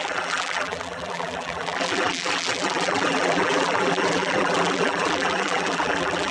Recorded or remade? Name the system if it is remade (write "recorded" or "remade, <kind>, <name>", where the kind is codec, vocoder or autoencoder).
remade, vocoder, BigVGAN v2